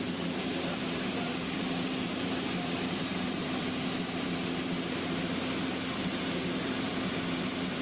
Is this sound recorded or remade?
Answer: remade